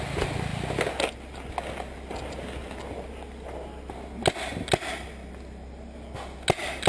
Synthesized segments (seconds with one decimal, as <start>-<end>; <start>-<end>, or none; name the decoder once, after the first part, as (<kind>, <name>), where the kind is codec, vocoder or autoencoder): none